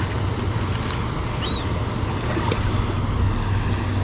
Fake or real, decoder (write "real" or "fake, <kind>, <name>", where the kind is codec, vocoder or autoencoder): real